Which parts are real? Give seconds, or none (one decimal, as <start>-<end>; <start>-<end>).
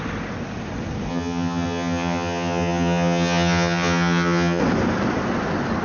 0.0-1.1; 4.6-5.8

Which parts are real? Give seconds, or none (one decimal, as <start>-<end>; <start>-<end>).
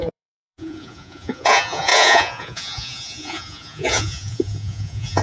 none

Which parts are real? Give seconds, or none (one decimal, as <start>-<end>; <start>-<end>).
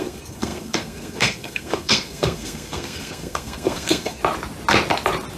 4.2-5.4